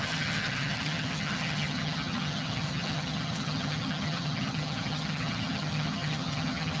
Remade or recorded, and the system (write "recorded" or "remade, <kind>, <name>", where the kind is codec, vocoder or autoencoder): remade, vocoder, HiFi-GAN